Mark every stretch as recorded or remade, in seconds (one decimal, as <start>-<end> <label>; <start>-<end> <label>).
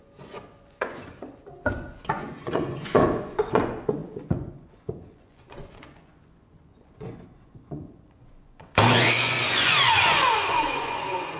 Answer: 0.0-11.4 remade